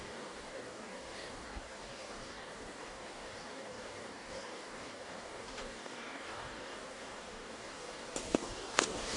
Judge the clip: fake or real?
fake